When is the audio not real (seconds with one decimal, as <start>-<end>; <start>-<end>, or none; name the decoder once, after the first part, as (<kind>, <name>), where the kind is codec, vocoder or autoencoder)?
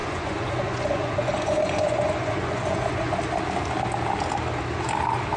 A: 0.0-3.2 (vocoder, Vocos)